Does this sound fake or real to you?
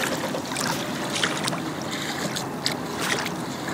real